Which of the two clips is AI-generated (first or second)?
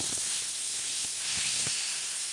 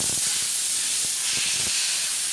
first